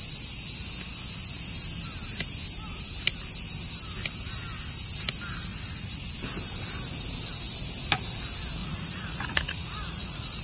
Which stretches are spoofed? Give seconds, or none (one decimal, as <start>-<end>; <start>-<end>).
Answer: 5.5-6.1; 8.6-10.4

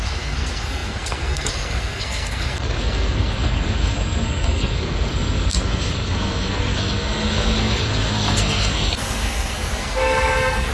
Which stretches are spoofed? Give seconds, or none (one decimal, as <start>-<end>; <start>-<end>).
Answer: 0.0-10.7

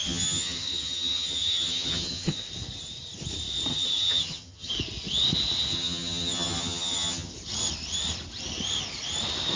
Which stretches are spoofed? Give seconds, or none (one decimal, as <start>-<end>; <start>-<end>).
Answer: 0.0-2.4; 3.7-4.7; 5.7-7.3

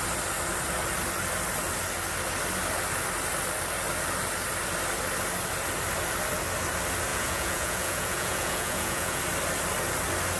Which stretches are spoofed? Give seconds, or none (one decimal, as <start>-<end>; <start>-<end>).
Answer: 7.1-9.2

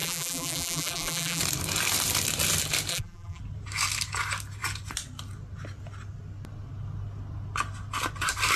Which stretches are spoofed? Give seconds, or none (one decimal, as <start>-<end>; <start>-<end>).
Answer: 0.0-1.4; 2.9-3.4

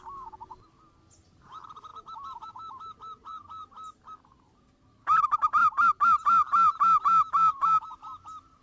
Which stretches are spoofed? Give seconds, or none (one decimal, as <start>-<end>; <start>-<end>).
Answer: none